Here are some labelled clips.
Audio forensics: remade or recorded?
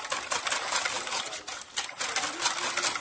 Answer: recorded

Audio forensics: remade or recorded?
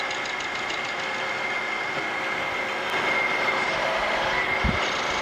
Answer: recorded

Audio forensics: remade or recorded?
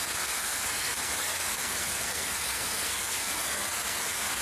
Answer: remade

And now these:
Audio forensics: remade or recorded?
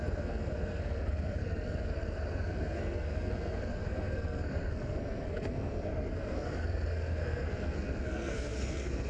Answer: remade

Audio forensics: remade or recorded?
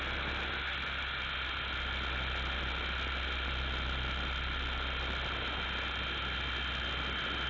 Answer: recorded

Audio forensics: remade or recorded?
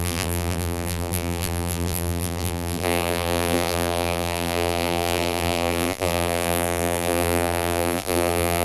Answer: remade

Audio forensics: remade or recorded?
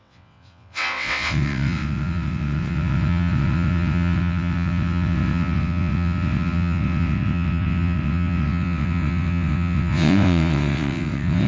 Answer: remade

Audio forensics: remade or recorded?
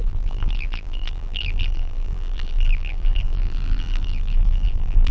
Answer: remade